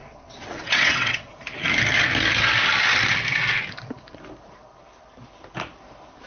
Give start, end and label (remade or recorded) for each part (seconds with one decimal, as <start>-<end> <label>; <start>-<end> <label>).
0.0-1.3 remade; 1.3-6.3 recorded